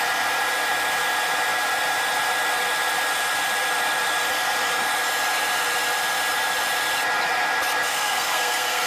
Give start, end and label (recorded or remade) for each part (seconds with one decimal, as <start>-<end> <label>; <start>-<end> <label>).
0.0-7.9 recorded; 7.9-8.9 remade